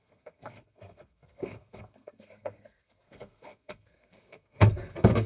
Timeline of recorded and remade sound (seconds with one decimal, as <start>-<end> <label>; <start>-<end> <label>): 0.0-5.3 remade